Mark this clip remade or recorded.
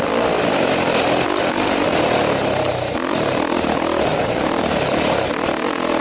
recorded